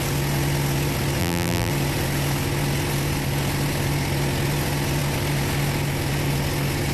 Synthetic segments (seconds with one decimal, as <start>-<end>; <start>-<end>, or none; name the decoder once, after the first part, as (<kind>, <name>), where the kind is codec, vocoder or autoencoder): 1.2-1.7 (vocoder, BigVGAN v2)